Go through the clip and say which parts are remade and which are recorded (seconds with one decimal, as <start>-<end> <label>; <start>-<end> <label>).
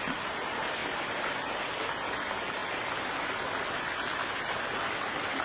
0.0-5.4 recorded